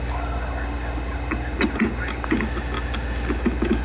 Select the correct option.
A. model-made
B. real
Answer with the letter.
B